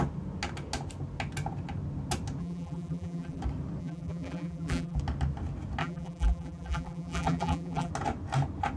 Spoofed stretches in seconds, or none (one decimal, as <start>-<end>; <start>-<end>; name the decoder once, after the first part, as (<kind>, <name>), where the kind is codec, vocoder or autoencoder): 2.4-3.4 (vocoder, BigVGAN v2); 3.8-5.0; 5.8-7.9